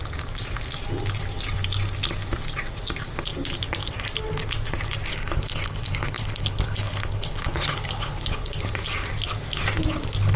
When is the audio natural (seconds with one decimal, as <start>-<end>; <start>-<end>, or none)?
0.0-5.1; 8.5-10.4